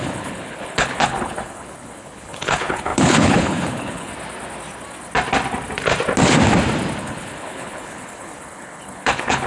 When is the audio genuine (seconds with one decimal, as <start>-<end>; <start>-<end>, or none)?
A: 4.1-7.0